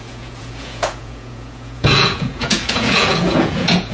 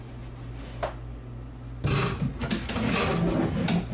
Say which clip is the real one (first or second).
second